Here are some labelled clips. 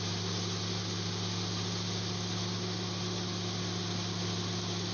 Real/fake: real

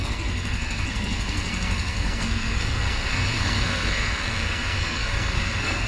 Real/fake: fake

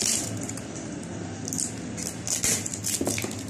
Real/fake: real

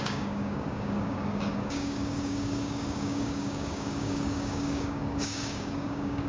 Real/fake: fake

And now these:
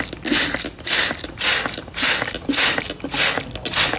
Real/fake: real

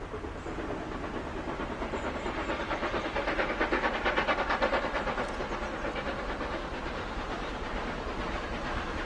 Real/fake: real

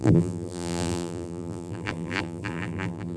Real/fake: fake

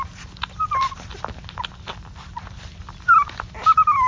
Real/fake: real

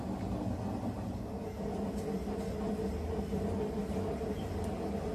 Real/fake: real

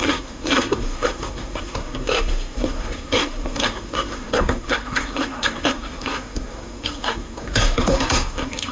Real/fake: fake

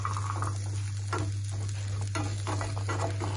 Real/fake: real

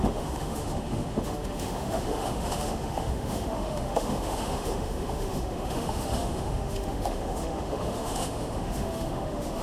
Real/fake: fake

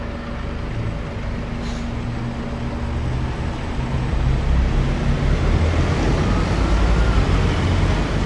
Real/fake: real